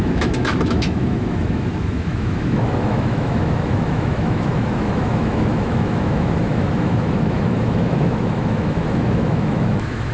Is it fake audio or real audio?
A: fake